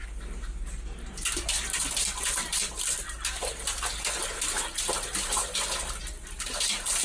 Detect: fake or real real